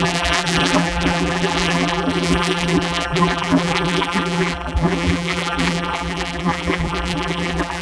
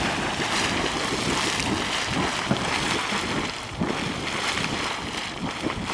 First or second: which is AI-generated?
first